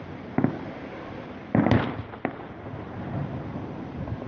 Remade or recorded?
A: recorded